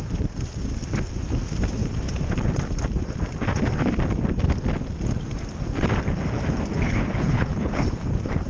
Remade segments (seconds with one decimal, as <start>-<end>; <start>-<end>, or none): 6.7-7.8